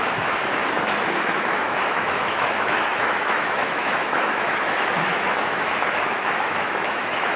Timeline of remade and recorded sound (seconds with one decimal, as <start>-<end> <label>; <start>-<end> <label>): 0.0-0.6 remade; 0.6-1.1 recorded; 1.1-7.4 remade